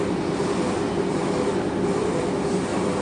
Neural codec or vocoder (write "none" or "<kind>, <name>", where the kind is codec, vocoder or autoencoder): none